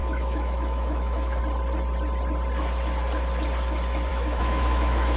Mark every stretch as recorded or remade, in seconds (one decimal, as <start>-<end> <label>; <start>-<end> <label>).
0.0-1.4 remade; 1.4-4.1 recorded; 4.1-5.2 remade